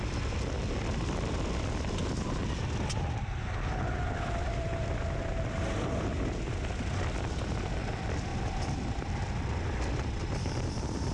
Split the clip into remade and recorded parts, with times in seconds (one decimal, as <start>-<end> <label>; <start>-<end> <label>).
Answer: 0.0-11.1 recorded